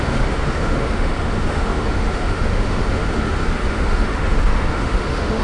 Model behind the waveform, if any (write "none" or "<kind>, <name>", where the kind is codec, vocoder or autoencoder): autoencoder, DAC-VAE